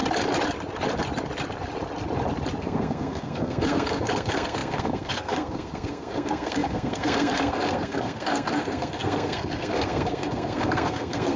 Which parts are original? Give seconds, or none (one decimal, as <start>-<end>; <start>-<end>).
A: 0.0-2.6